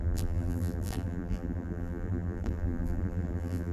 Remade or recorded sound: remade